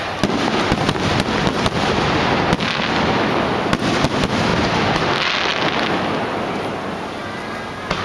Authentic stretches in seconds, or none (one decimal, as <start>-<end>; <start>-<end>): 0.0-8.0